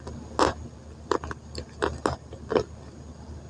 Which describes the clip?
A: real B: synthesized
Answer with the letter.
A